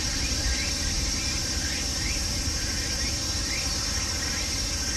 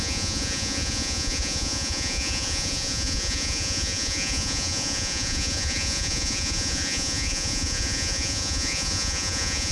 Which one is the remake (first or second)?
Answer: second